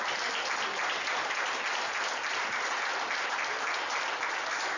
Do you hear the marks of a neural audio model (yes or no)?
no